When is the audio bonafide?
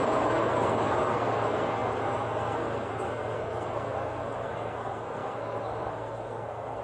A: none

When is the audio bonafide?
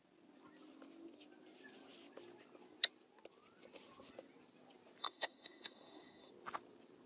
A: 0.0-5.0; 6.3-7.1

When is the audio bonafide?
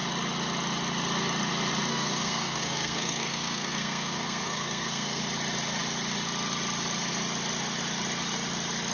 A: 0.0-1.9; 5.2-8.9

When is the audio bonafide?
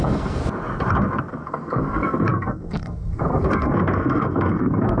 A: 0.4-1.2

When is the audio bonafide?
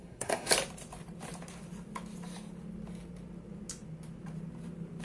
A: 0.5-5.0